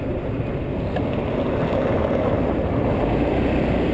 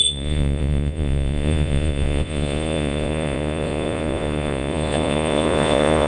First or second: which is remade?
second